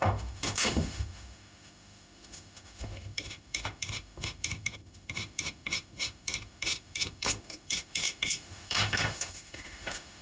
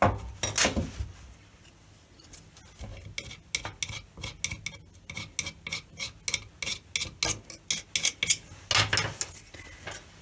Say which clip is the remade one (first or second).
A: first